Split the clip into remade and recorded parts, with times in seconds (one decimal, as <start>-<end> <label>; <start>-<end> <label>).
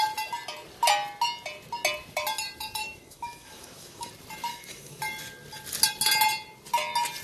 0.0-2.8 recorded; 2.8-4.1 remade; 4.1-4.5 recorded; 4.5-5.0 remade; 5.0-7.2 recorded